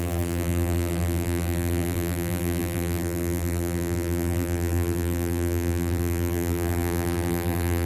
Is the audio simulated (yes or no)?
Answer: yes